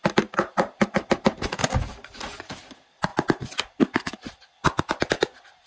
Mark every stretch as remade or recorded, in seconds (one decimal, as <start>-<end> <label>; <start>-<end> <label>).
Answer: 0.0-5.7 recorded